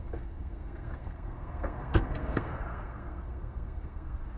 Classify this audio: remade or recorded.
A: remade